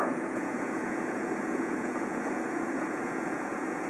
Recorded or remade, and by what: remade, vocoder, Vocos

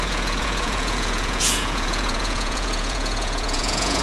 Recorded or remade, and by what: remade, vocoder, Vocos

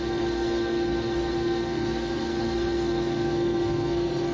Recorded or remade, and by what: remade, codec, SNAC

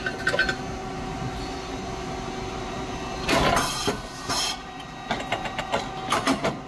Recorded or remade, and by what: recorded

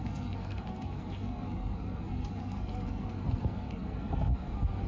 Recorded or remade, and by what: remade, codec, SNAC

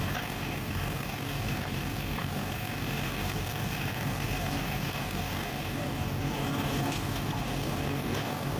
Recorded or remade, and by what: remade, codec, DAC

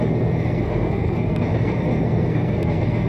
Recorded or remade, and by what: remade, codec, SNAC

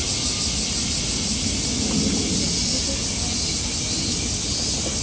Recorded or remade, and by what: recorded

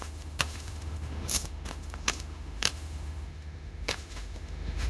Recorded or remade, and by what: remade, autoencoder, DAC-VAE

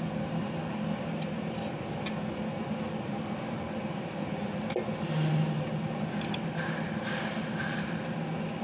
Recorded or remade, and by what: recorded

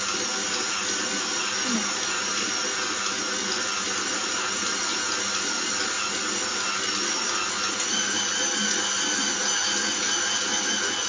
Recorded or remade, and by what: recorded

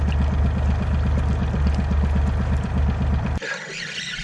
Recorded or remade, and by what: recorded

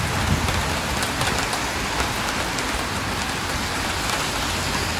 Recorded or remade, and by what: recorded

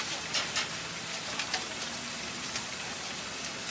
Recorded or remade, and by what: recorded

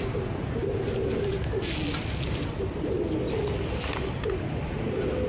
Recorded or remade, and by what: recorded